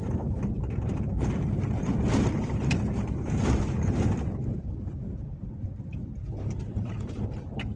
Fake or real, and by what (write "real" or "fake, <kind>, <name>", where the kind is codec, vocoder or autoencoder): fake, vocoder, BigVGAN v2